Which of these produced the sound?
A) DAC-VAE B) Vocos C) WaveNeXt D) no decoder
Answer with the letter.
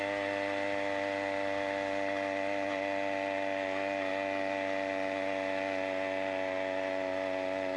D